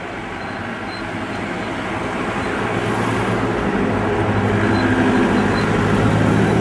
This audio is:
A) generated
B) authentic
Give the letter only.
B